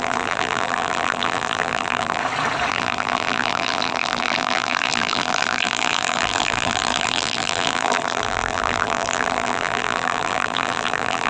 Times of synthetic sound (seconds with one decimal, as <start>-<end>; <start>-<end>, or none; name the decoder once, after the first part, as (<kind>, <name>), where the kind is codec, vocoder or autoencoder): 0.0-2.2 (vocoder, BigVGAN v2); 2.7-11.3